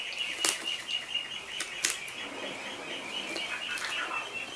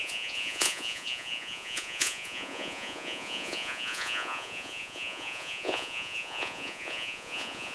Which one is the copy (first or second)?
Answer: second